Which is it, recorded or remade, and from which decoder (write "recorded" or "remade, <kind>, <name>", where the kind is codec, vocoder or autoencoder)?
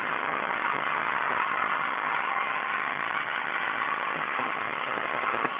remade, vocoder, HiFi-GAN